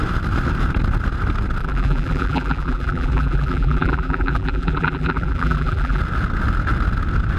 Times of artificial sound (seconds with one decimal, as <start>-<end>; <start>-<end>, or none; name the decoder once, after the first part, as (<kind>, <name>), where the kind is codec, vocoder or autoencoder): 1.6-6.0 (vocoder, BigVGAN v2)